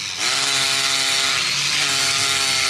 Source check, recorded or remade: recorded